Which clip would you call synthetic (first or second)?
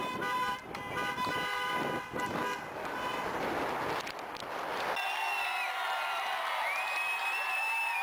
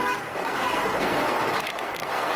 second